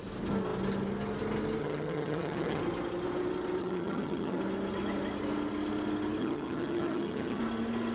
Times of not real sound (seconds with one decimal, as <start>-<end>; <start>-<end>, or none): 1.6-2.6; 3.6-4.4; 6.2-7.4